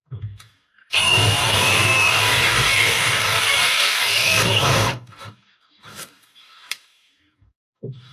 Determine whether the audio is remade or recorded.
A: remade